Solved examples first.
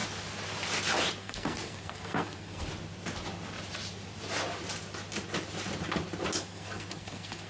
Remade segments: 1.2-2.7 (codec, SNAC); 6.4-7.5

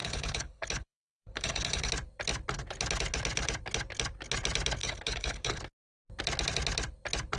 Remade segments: 0.0-1.9 (codec, HILCodec); 4.8-5.6

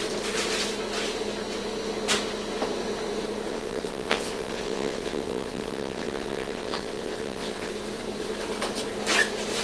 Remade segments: 3.5-7.7 (vocoder, WaveNeXt)

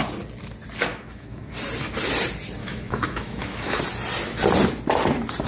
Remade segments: 0.9-1.5 (autoencoder, DAC-VAE); 2.6-3.8